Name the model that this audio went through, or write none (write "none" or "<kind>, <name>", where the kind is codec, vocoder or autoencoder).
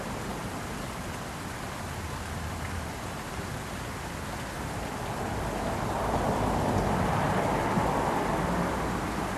none